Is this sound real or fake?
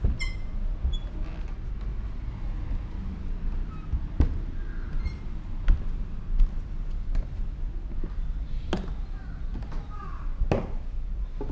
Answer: real